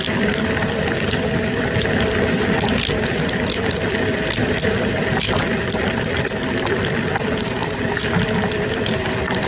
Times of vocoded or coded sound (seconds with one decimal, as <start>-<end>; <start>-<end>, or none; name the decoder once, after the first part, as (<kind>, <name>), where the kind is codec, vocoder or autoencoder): none